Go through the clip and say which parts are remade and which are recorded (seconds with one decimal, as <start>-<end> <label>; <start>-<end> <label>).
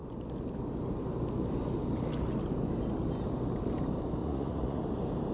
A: 0.0-4.2 recorded; 4.2-4.8 remade; 4.8-5.3 recorded